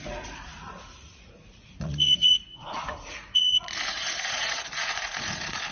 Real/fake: fake